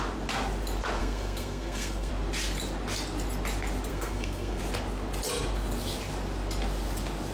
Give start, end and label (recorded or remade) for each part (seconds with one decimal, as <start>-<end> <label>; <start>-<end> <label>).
0.0-1.0 recorded; 1.0-2.1 remade; 2.1-3.9 recorded; 3.9-4.6 remade; 4.6-7.3 recorded